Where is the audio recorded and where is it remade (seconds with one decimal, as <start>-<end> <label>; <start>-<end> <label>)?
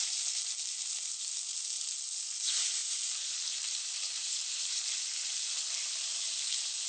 0.0-2.8 recorded; 2.8-5.2 remade; 5.2-6.1 recorded; 6.1-6.9 remade